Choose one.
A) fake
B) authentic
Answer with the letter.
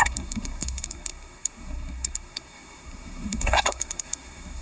A